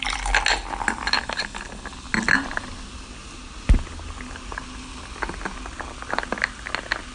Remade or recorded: recorded